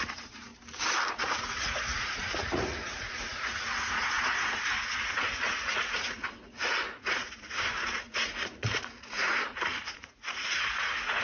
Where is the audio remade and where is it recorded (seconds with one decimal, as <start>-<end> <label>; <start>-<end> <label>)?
0.0-0.5 remade; 0.5-1.1 recorded; 1.1-11.2 remade